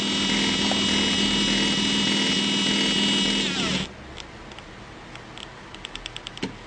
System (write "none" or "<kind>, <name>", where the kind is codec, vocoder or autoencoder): none